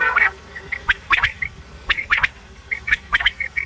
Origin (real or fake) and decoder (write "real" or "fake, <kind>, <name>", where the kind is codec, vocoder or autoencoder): fake, codec, SNAC